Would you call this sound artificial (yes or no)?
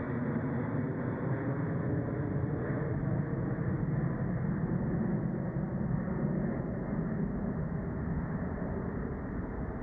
no